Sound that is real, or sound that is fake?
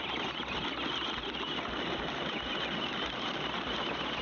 real